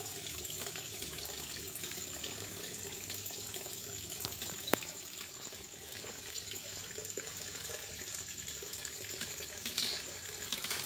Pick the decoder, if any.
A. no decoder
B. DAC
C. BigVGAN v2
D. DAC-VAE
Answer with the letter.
B